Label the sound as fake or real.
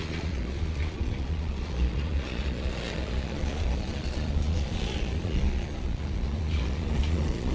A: fake